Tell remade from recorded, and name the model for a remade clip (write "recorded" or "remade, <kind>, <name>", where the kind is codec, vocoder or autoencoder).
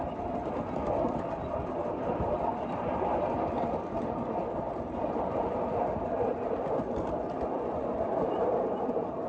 recorded